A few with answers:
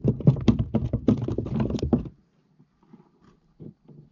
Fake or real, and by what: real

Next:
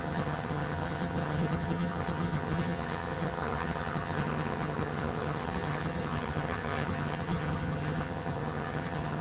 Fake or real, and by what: fake, vocoder, HiFi-GAN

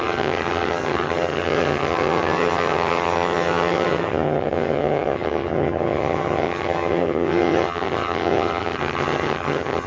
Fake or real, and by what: fake, vocoder, HiFi-GAN